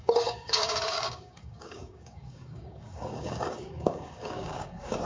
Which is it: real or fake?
fake